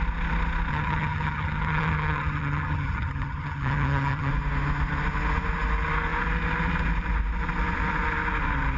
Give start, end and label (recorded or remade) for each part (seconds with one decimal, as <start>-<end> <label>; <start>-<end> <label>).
0.0-0.7 recorded; 0.7-4.3 remade; 4.3-8.8 recorded